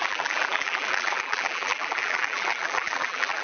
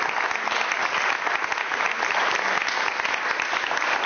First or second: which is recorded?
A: second